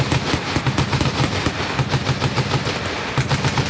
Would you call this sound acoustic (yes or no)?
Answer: yes